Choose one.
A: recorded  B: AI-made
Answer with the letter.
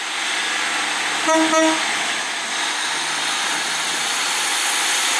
A